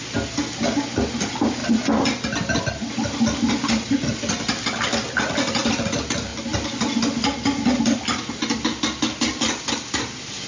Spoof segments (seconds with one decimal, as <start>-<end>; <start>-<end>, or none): none